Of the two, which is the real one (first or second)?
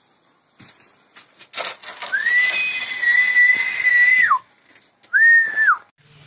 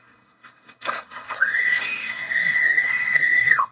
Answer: first